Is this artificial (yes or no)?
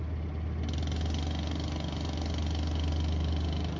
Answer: no